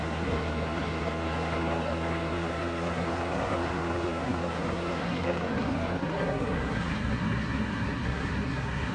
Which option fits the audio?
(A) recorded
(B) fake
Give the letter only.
B